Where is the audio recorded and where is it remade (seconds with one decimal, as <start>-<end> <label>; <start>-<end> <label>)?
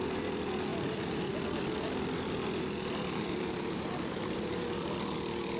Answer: 0.0-5.6 recorded